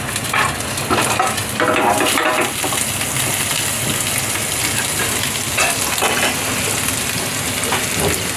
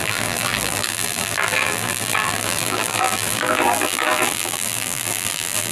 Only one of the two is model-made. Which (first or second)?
second